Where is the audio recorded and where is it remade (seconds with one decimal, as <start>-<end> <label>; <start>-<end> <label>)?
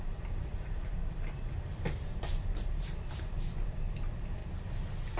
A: 0.0-1.0 remade; 1.0-1.8 recorded; 1.8-4.4 remade; 4.4-5.2 recorded